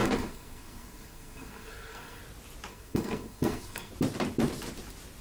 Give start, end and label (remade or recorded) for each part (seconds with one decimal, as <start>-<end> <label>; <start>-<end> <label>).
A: 0.0-2.2 remade; 2.2-2.7 recorded; 2.7-3.9 remade; 3.9-5.2 recorded